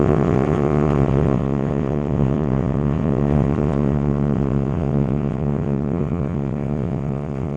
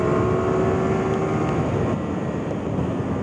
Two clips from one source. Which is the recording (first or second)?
second